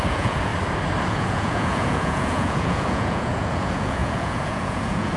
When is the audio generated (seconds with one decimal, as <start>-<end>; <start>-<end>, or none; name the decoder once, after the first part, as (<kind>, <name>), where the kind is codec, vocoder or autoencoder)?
0.0-0.5 (vocoder, Vocos); 1.1-5.2

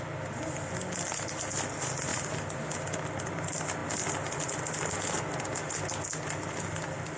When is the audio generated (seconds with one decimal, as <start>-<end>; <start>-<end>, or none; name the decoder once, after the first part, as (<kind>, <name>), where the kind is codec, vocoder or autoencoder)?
none

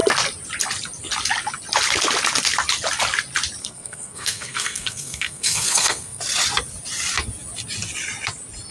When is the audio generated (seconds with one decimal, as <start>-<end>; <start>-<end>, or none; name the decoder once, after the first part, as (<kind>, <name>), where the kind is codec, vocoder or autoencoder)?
3.6-6.2 (codec, SNAC)

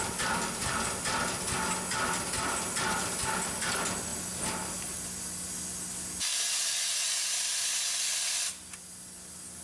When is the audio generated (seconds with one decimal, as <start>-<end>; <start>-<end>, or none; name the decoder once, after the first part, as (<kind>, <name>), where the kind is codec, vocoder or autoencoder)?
none

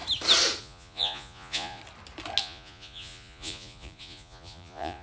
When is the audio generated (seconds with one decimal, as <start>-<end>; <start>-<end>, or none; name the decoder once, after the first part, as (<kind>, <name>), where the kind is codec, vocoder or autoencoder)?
0.6-1.8 (vocoder, Vocos); 2.4-5.0

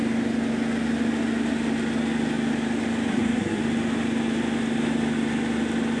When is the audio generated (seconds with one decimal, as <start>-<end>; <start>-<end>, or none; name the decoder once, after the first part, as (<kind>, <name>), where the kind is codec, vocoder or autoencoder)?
3.1-3.6 (codec, SNAC)